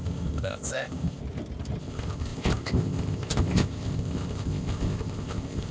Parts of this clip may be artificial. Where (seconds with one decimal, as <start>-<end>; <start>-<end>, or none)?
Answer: 0.0-1.2; 1.8-5.7